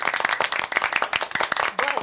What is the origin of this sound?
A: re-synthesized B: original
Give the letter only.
B